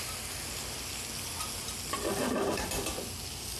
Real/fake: real